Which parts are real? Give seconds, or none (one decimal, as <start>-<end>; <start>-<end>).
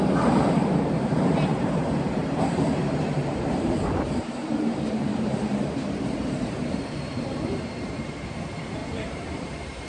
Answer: none